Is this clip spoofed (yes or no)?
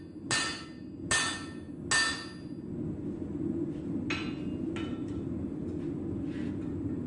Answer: no